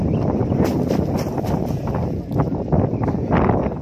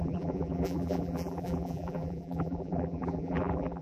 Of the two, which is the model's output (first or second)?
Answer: second